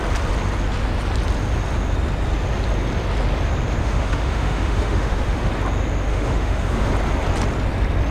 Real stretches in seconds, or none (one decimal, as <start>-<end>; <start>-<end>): 0.0-3.8; 5.5-6.1; 6.9-8.1